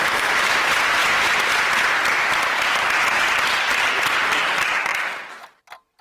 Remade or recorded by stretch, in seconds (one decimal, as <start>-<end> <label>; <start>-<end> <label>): 0.0-1.0 remade; 1.0-3.2 recorded; 3.2-4.9 remade; 4.9-6.0 recorded